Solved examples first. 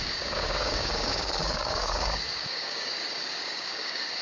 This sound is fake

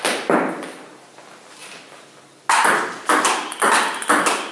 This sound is real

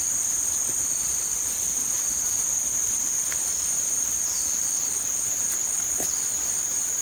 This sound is real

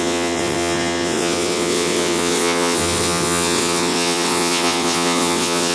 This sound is fake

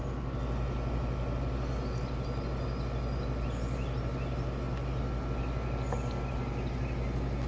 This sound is real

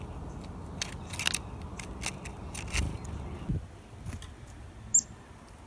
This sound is real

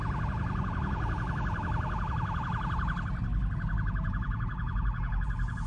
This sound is real